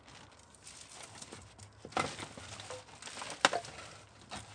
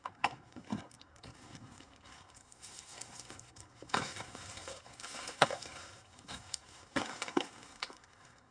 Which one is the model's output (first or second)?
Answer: second